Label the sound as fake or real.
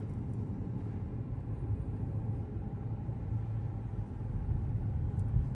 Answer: real